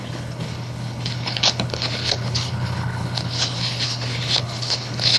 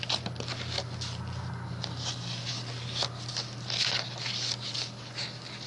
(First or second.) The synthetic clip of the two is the first